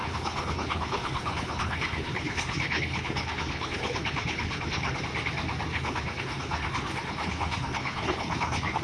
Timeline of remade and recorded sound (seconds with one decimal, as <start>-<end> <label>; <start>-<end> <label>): 0.0-5.0 remade; 5.0-5.7 recorded; 5.7-8.8 remade